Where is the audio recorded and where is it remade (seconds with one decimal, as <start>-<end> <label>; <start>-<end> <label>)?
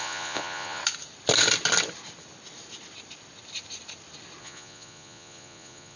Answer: 0.0-0.8 remade; 0.8-4.4 recorded; 4.4-6.0 remade